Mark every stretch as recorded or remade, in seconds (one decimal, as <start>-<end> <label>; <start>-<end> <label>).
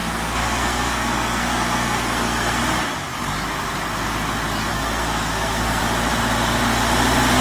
0.0-2.6 remade; 2.6-4.7 recorded; 4.7-5.8 remade; 5.8-7.4 recorded